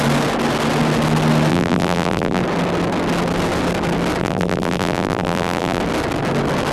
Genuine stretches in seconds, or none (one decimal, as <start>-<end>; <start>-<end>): 0.0-1.5; 2.4-4.2; 5.8-6.7